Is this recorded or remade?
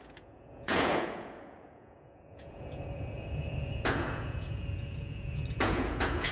remade